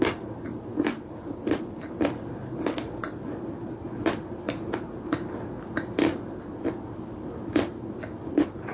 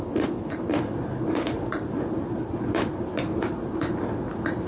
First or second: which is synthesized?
second